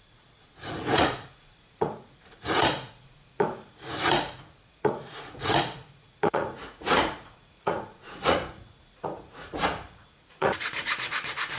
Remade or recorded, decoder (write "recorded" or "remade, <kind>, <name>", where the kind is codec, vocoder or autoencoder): remade, vocoder, Vocos